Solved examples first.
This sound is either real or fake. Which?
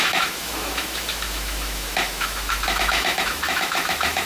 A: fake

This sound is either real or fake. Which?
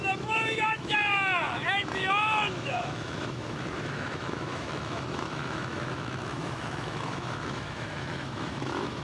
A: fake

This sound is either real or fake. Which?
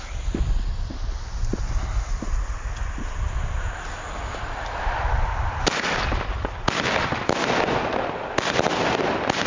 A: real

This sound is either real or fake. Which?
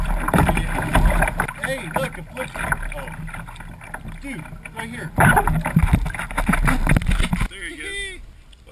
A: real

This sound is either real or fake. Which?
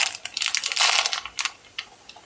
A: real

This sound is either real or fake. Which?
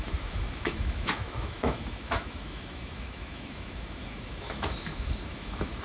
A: fake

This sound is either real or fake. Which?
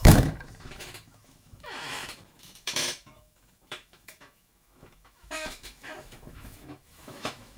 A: fake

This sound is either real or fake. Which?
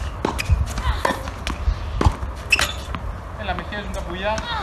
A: real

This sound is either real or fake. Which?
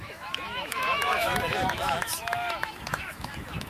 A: fake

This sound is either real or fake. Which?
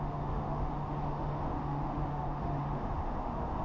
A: fake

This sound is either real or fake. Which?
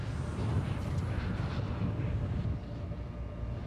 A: real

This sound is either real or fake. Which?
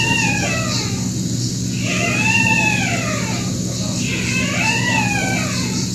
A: real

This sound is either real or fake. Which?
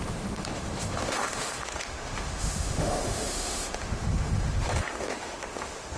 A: fake